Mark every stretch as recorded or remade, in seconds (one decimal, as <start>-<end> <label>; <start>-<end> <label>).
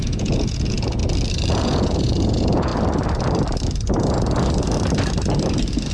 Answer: 0.0-1.0 remade; 1.0-1.5 recorded; 1.5-2.7 remade; 2.7-5.9 recorded